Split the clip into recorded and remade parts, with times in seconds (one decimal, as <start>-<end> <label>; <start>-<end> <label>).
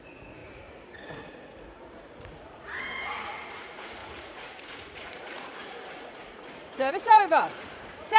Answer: 0.0-8.2 remade